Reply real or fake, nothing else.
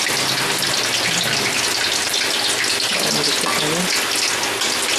real